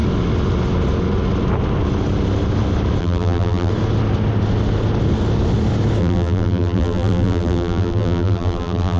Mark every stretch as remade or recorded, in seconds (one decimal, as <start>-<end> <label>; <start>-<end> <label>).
0.0-3.0 recorded; 3.0-3.7 remade; 3.7-6.0 recorded; 6.0-9.0 remade

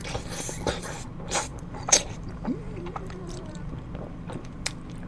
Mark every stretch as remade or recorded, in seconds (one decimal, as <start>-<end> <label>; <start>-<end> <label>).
0.0-1.5 recorded; 1.5-4.6 remade; 4.6-5.1 recorded

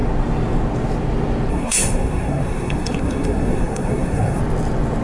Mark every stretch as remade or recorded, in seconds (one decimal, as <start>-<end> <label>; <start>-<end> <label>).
0.0-1.5 recorded; 1.5-4.4 remade; 4.4-5.0 recorded

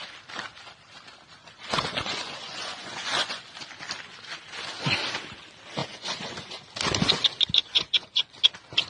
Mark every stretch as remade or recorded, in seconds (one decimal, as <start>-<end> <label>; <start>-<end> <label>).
0.0-1.4 recorded; 1.4-3.5 remade; 3.5-5.8 recorded; 5.8-6.6 remade; 6.6-7.6 recorded; 7.6-8.3 remade; 8.3-8.9 recorded

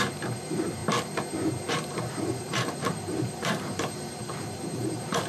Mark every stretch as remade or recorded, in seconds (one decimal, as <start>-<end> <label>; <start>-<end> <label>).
0.0-0.8 remade; 0.8-1.7 recorded; 1.7-5.3 remade